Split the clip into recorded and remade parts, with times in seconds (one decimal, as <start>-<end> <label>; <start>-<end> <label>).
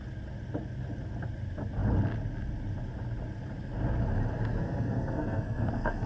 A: 0.0-4.6 recorded; 4.6-6.1 remade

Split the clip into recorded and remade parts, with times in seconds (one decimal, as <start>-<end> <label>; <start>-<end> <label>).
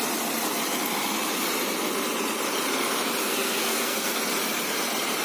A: 0.0-3.2 recorded; 3.2-4.2 remade; 4.2-5.2 recorded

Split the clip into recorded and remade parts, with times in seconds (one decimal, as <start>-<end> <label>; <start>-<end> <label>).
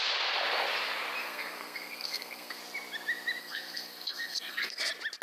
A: 0.0-1.2 recorded; 1.2-2.6 remade; 2.6-3.4 recorded; 3.4-4.8 remade; 4.8-5.2 recorded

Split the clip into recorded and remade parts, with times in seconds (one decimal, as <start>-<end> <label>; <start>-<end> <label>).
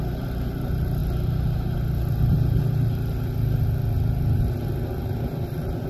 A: 0.0-5.9 recorded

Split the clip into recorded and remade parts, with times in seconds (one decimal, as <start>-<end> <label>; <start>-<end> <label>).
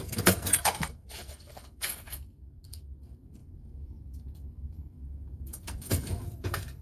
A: 0.0-6.8 remade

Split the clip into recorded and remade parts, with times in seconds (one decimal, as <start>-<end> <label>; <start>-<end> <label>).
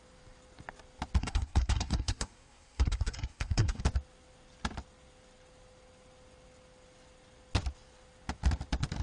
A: 0.0-1.2 recorded; 1.2-3.8 remade; 3.8-9.0 recorded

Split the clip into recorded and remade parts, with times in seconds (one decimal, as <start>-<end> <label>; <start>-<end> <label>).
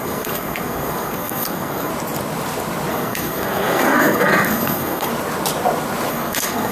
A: 0.0-1.9 remade; 1.9-2.9 recorded; 2.9-5.1 remade; 5.1-6.1 recorded; 6.1-6.7 remade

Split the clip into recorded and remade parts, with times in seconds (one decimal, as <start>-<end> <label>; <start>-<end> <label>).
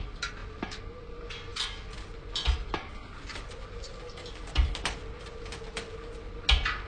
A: 0.0-6.9 recorded